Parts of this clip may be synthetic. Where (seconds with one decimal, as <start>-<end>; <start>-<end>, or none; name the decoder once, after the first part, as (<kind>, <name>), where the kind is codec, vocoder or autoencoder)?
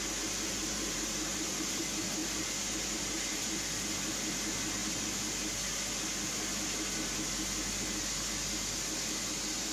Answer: 0.6-1.8 (vocoder, BigVGAN v2); 2.2-3.6